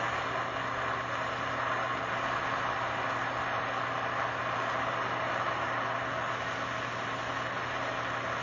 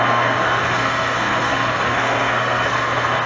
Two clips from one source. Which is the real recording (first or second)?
first